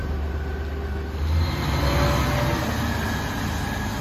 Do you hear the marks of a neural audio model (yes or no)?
no